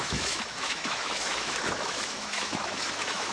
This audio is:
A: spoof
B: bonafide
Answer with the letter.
A